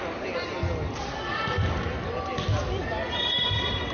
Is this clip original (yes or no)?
yes